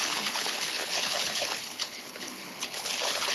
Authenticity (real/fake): fake